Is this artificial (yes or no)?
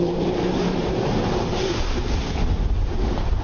yes